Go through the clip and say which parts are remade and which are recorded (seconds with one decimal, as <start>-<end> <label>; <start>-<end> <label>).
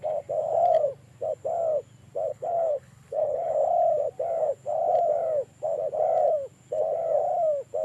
0.0-2.3 recorded; 2.3-3.5 remade; 3.5-7.8 recorded